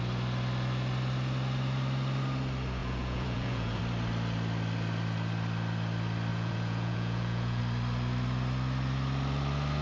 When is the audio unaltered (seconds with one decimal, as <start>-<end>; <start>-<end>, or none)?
0.0-2.8; 3.8-6.3; 7.6-9.8